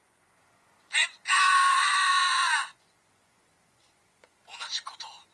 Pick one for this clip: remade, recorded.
remade